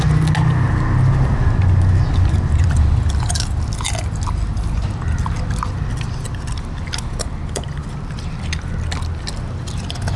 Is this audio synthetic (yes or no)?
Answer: no